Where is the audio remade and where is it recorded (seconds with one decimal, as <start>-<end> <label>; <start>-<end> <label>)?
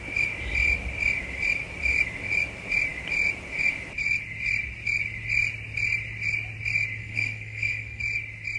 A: 0.0-7.0 recorded; 7.0-8.0 remade; 8.0-8.6 recorded